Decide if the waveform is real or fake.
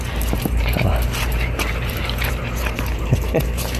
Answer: fake